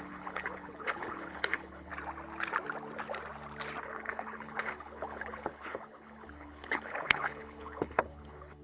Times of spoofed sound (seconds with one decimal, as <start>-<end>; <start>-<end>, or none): 0.0-1.9; 3.8-8.6